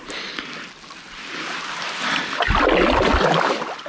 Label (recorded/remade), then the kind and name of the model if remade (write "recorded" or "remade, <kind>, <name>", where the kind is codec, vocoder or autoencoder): recorded